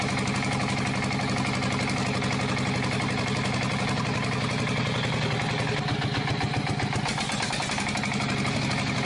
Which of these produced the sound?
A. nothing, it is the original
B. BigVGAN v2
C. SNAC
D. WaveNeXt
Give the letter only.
A